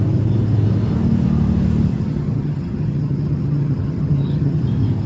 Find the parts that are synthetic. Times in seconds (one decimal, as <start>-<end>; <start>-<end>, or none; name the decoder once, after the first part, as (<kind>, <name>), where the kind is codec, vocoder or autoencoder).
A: 1.9-4.6 (vocoder, HiFi-GAN)